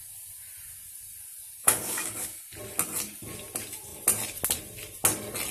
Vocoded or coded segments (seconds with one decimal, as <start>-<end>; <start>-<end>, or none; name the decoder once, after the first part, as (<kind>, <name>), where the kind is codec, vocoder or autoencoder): 1.6-2.4 (codec, DAC)